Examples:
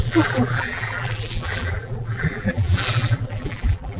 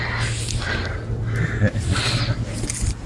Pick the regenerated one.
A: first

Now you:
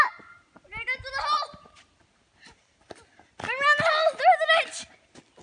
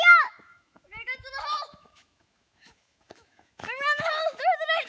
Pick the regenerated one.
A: second